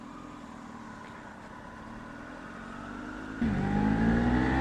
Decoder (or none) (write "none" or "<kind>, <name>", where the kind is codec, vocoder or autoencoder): none